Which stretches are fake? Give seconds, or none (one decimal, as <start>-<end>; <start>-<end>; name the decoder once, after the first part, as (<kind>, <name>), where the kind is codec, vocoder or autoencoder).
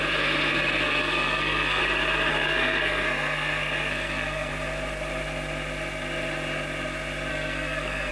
0.5-1.8 (codec, SNAC); 2.3-4.5; 7.3-8.1